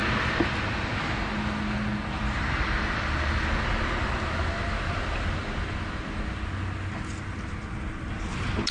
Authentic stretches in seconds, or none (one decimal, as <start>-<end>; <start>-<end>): 0.0-8.7